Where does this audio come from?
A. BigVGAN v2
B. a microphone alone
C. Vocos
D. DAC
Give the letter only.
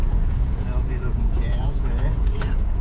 C